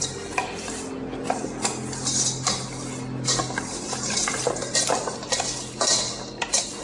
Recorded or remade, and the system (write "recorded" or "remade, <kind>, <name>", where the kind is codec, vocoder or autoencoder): recorded